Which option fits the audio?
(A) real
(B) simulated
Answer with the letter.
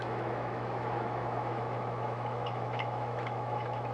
B